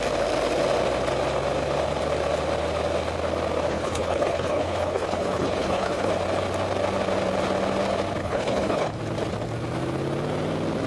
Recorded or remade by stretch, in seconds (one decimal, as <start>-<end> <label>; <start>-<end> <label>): 0.0-3.7 recorded; 3.7-6.1 remade; 6.1-8.2 recorded; 8.2-9.0 remade; 9.0-10.9 recorded